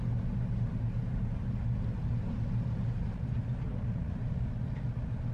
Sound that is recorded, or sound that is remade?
recorded